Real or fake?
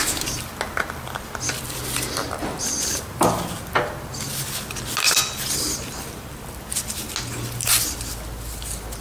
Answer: real